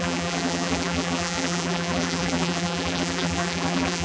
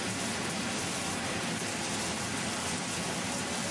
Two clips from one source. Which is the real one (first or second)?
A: second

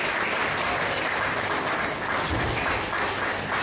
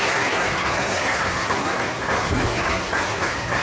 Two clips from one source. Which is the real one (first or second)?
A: first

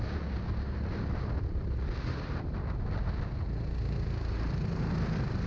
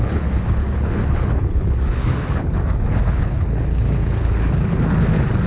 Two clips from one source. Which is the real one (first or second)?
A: first